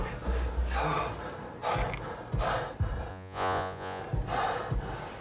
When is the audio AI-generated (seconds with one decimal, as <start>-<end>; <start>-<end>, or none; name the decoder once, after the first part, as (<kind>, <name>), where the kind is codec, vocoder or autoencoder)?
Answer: 3.1-4.0 (vocoder, Vocos)